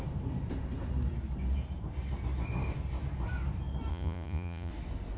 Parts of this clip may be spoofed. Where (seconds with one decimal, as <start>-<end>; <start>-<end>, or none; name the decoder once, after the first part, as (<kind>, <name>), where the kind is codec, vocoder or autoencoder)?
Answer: 3.9-4.7 (vocoder, Vocos)